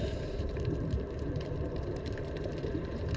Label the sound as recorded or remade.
remade